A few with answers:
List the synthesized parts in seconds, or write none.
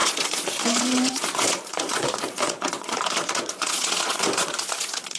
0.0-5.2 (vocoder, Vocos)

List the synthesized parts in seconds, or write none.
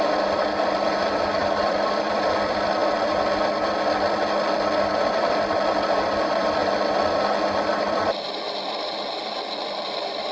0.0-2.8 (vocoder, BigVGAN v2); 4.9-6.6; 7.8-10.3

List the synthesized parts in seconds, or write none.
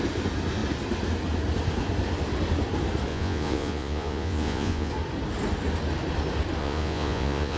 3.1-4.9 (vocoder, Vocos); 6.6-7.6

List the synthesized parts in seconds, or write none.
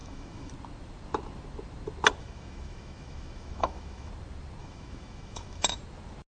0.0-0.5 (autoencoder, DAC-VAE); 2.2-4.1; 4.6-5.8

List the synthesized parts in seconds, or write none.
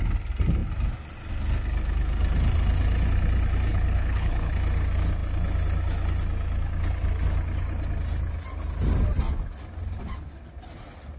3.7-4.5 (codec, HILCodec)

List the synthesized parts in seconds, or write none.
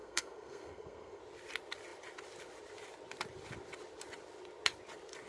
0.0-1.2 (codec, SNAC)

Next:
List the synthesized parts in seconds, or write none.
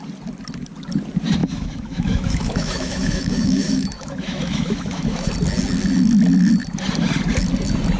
1.4-5.3 (autoencoder, DAC-VAE)